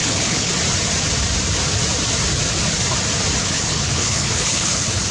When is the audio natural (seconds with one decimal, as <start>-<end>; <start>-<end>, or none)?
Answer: 0.5-3.4